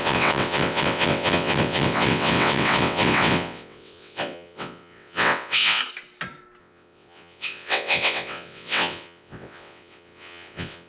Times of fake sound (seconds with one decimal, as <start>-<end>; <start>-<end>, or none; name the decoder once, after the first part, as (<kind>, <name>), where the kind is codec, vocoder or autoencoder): 0.0-5.8 (vocoder, WaveNeXt); 6.6-10.9